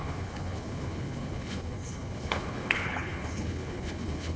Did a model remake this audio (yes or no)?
yes